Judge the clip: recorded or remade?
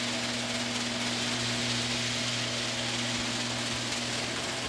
recorded